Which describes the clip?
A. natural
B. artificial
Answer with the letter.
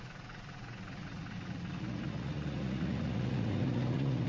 B